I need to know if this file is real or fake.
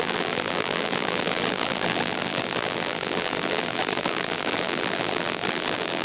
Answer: fake